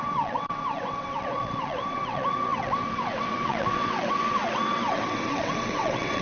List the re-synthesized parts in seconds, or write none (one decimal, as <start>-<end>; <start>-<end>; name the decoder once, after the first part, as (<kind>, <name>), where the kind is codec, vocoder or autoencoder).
0.0-6.2 (vocoder, WaveNeXt)